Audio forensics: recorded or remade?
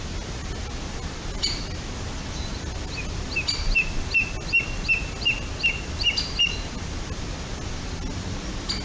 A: recorded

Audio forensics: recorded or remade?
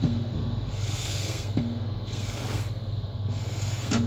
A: remade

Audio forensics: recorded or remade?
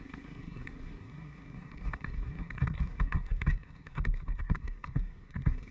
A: remade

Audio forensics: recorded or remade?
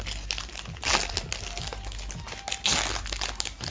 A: recorded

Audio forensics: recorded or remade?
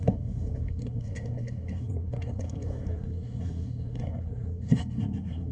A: remade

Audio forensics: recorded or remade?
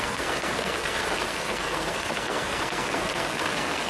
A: remade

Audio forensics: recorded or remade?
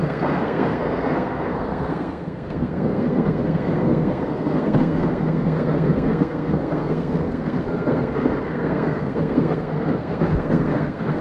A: remade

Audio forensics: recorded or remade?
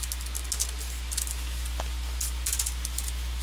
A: recorded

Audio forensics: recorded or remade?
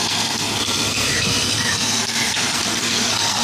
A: remade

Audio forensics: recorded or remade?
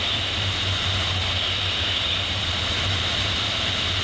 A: recorded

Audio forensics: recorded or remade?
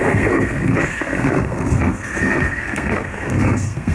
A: remade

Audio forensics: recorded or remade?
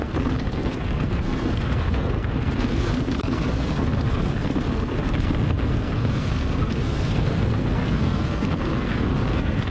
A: remade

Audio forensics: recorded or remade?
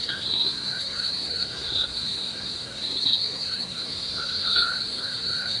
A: remade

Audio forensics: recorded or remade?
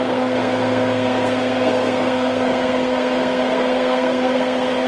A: remade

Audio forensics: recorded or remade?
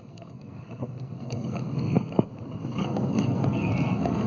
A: remade